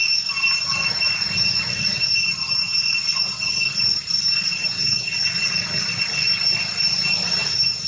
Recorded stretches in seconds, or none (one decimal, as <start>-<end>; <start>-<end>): 0.0-7.9